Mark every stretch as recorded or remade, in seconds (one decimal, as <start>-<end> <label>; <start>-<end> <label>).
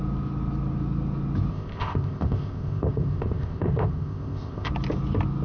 0.0-1.5 recorded; 1.5-4.7 remade; 4.7-5.4 recorded